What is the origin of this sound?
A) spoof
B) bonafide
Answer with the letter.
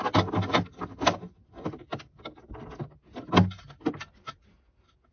B